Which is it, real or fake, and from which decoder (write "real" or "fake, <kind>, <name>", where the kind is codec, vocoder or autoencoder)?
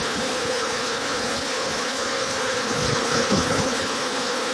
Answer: fake, codec, HILCodec